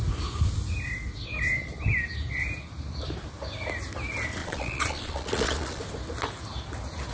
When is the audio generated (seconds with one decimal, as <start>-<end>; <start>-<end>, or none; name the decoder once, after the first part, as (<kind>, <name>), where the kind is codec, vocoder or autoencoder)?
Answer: 4.4-5.8 (vocoder, Vocos)